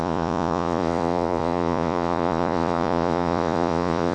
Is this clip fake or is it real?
fake